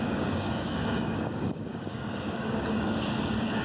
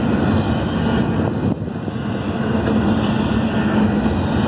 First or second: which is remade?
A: first